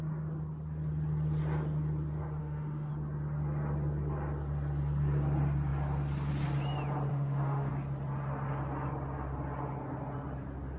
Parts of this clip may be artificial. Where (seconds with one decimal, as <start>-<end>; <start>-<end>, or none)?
2.4-2.9; 7.1-7.7